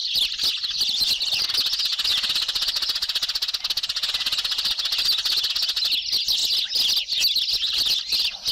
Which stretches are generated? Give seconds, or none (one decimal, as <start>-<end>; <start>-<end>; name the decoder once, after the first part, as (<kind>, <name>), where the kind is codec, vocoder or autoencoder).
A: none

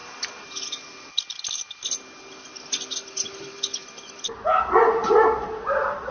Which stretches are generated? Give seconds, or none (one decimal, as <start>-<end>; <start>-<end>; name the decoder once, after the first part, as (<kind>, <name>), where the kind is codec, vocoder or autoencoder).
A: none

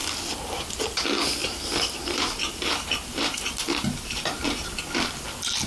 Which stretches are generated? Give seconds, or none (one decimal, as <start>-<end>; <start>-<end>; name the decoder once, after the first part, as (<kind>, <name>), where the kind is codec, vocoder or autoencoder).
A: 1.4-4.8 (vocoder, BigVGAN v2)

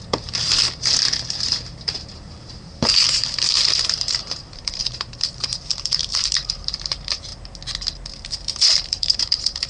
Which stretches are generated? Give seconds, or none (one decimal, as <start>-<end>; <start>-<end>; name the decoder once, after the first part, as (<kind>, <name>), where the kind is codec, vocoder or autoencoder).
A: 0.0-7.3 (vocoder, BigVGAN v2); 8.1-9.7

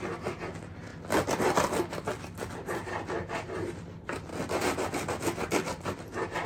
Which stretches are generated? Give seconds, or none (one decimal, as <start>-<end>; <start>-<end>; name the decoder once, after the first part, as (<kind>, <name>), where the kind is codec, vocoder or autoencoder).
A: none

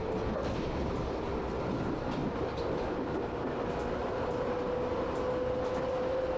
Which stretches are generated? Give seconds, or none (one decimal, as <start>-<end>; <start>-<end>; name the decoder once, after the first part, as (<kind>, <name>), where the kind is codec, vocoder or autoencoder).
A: 0.0-1.0 (vocoder, BigVGAN v2); 1.6-2.2; 5.8-6.4